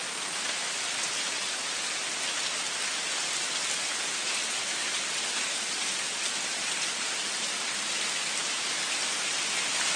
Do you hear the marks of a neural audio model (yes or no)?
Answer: no